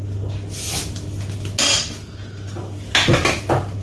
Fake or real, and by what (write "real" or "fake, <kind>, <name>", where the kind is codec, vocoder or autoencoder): real